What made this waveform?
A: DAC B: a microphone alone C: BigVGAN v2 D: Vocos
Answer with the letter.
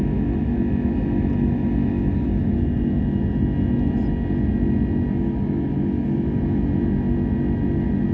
B